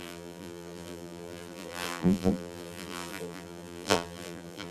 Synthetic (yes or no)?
yes